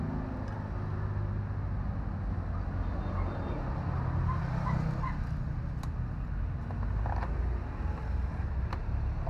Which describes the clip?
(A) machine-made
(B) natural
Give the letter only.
B